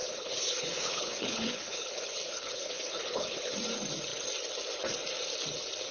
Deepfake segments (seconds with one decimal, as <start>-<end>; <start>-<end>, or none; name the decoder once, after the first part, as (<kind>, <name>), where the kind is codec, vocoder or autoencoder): 0.0-3.5 (codec, HILCodec)